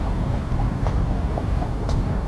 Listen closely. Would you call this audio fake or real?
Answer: fake